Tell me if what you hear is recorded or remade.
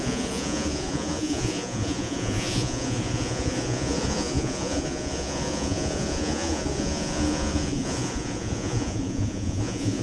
remade